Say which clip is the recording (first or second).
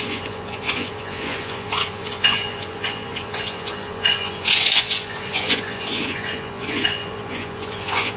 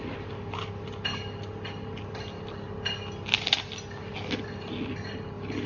second